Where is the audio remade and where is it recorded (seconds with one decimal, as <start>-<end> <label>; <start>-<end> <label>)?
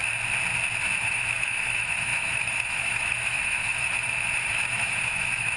0.0-1.0 recorded; 1.0-5.6 remade